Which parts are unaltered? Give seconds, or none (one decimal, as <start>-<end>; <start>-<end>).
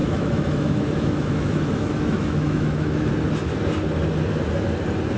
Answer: 3.1-5.2